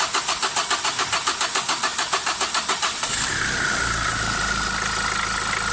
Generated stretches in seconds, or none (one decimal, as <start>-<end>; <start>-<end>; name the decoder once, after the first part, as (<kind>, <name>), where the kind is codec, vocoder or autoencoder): none